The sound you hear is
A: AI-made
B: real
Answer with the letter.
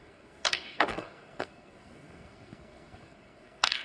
A